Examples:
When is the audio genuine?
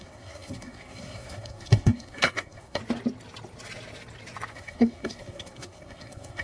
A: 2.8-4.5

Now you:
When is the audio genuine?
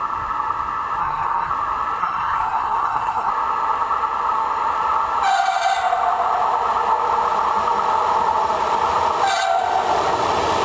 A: 0.0-1.0; 1.5-2.0; 3.3-10.6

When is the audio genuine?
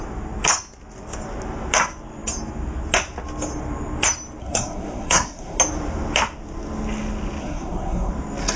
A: 0.0-4.4; 5.6-7.4; 8.1-8.6